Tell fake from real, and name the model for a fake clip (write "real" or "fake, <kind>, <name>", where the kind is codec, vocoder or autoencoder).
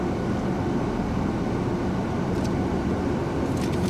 real